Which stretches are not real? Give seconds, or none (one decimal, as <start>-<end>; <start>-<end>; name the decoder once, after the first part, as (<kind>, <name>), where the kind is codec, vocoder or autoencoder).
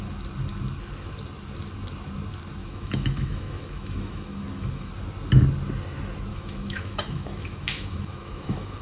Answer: 2.6-4.9 (autoencoder, DAC-VAE); 6.3-8.8